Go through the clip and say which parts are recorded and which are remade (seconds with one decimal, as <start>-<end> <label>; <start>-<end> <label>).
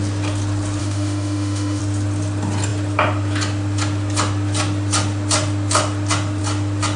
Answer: 0.0-0.8 recorded; 0.8-1.8 remade; 1.8-7.0 recorded